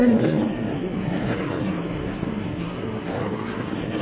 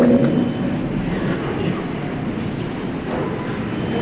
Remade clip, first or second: first